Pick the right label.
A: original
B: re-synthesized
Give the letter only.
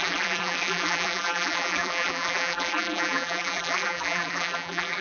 B